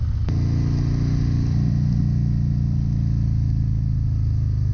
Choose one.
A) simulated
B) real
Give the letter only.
B